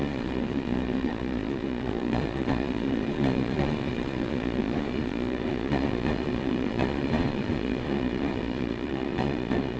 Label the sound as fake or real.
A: fake